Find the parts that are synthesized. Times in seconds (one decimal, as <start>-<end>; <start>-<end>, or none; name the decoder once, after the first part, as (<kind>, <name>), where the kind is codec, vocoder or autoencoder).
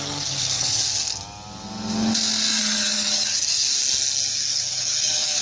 0.0-0.8 (codec, DAC); 2.6-3.8; 4.3-5.4